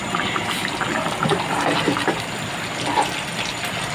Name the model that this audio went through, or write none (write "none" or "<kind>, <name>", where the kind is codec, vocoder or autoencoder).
none